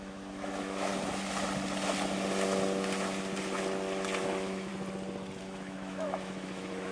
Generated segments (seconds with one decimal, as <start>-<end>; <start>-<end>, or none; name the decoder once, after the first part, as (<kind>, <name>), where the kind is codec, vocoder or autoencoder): 0.0-0.9 (autoencoder, DAC-VAE); 4.2-4.7; 5.4-6.9